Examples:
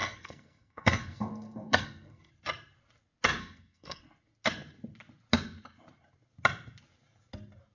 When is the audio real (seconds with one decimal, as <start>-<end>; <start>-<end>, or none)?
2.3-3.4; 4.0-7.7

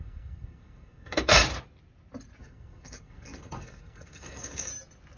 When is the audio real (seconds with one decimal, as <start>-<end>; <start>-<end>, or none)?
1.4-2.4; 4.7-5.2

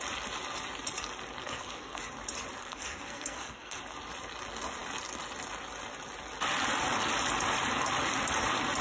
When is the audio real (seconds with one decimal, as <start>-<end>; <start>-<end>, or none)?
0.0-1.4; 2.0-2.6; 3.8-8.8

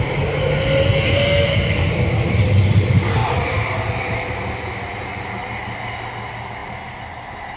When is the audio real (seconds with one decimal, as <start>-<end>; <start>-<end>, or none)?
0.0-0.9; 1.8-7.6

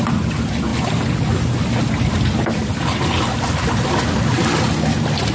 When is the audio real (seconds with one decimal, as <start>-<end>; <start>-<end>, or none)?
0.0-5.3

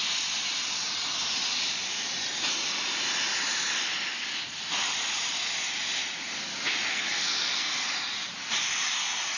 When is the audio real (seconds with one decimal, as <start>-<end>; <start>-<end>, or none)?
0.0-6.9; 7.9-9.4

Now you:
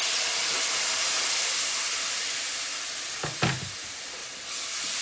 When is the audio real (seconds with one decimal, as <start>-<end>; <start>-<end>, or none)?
0.0-5.0